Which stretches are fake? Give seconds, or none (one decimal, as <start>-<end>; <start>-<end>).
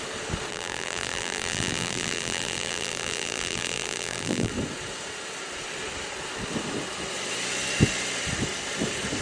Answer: 0.5-4.5